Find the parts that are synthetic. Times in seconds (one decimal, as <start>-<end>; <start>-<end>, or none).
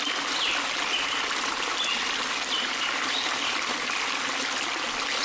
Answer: none